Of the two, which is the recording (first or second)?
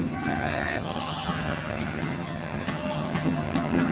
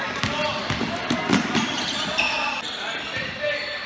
second